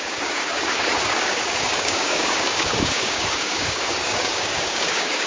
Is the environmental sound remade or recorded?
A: remade